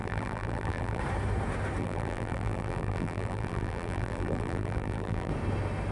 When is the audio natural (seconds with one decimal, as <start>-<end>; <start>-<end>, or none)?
1.0-1.8; 5.3-5.9